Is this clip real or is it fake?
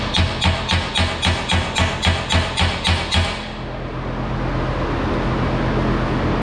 real